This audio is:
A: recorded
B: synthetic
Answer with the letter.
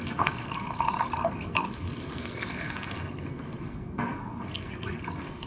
B